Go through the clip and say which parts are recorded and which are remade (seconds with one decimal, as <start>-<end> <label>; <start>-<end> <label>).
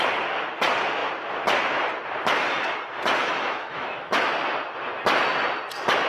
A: 0.0-3.2 recorded; 3.2-4.3 remade; 4.3-6.1 recorded